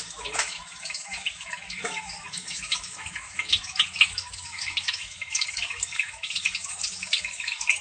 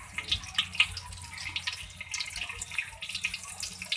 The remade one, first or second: first